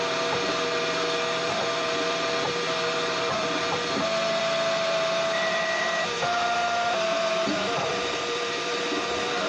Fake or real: fake